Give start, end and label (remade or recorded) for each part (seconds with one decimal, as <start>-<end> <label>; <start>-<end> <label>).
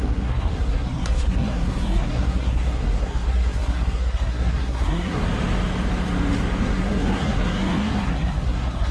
0.0-5.2 remade; 5.2-6.6 recorded; 6.6-8.9 remade